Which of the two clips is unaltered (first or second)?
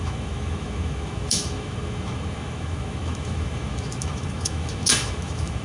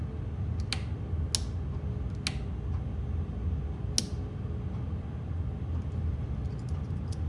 second